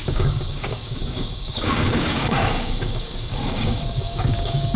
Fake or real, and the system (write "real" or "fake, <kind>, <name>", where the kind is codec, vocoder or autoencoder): fake, codec, DAC